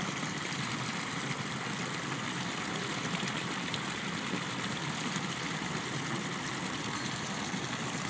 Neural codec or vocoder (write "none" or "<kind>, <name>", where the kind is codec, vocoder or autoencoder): none